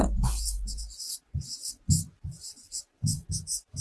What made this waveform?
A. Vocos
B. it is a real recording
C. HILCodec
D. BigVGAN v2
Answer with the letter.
A